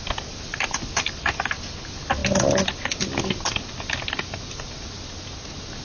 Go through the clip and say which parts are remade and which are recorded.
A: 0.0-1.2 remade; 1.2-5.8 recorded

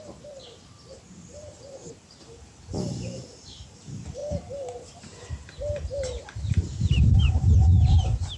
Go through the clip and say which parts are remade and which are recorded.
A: 0.0-8.4 remade

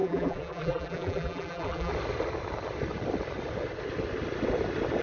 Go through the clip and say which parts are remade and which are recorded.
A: 0.0-1.9 remade; 1.9-5.0 recorded